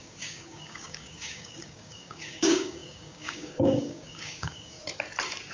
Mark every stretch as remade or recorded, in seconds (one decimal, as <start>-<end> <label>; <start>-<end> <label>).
0.0-4.8 remade; 4.8-5.5 recorded